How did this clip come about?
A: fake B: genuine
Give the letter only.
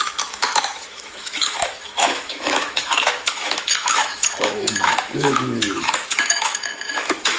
A